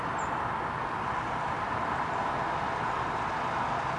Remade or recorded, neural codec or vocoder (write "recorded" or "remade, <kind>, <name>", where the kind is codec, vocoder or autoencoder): recorded